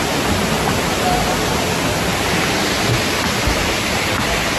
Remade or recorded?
recorded